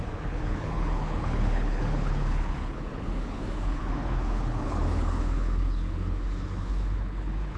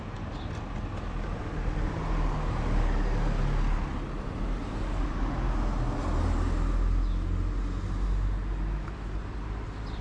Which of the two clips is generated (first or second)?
first